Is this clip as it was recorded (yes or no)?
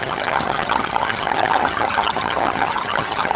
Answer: no